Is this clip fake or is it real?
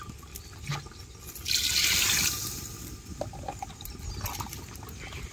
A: real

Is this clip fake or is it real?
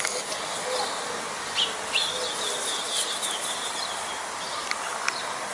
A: real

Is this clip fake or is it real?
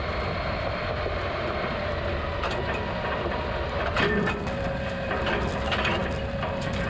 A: real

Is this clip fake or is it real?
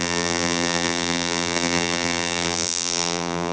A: fake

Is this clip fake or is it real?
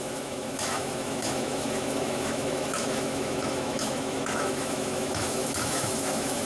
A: fake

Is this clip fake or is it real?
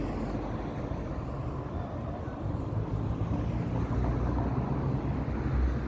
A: real